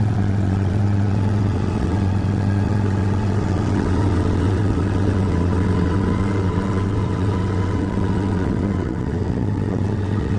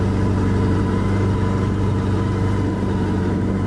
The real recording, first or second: second